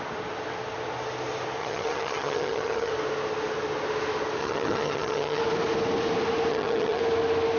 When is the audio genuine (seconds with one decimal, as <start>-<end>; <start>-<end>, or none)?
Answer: 0.0-1.6; 2.9-4.4; 5.4-6.5; 7.0-7.6